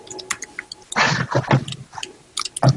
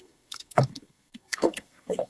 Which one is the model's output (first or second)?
second